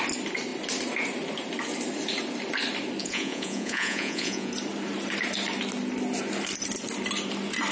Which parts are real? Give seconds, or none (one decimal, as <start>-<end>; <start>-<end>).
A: 0.0-3.0; 4.5-7.7